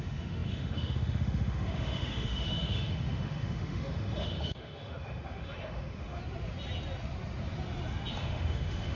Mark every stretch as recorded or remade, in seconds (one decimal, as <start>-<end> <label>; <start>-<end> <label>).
0.0-6.2 remade; 6.2-8.1 recorded; 8.1-9.0 remade